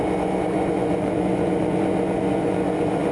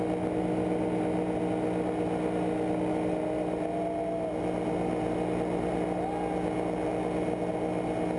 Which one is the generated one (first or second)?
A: first